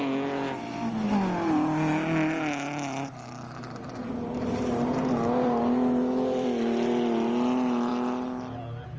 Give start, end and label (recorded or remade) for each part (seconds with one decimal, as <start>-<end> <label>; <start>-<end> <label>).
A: 0.0-9.0 recorded